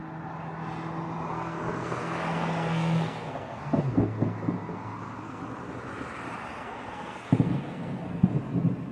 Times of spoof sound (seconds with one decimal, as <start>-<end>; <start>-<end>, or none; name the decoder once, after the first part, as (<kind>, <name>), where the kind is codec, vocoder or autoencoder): 1.3-5.4 (codec, SNAC); 6.5-8.4